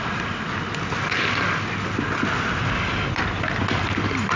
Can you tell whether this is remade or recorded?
recorded